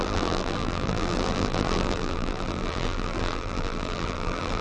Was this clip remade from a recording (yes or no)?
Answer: yes